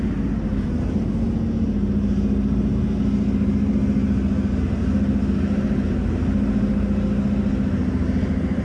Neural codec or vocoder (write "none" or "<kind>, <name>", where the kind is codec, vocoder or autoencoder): none